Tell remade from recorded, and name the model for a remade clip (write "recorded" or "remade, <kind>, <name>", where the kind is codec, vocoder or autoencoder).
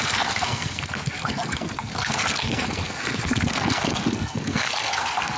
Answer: remade, codec, SNAC